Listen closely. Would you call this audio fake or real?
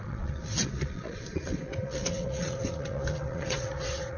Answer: fake